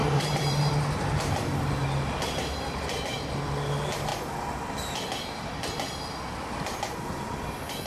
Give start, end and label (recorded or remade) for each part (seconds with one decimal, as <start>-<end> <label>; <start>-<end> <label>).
0.0-0.7 remade; 0.7-7.9 recorded